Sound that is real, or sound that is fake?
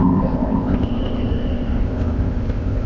fake